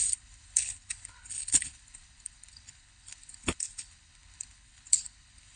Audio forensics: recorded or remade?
remade